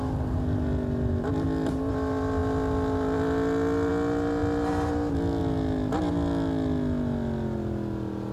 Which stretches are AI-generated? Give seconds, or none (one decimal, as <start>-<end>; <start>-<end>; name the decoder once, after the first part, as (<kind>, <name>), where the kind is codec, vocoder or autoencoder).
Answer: none